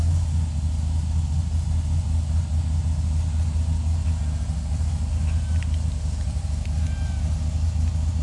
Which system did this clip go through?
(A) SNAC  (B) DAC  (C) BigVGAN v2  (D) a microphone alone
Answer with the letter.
D